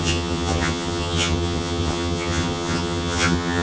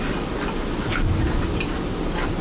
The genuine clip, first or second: second